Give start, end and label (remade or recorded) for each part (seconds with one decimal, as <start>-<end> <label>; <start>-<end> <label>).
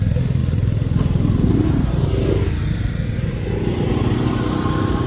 0.0-5.1 recorded